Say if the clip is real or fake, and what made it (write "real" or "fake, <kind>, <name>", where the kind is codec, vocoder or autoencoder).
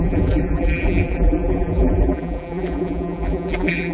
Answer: fake, vocoder, BigVGAN v2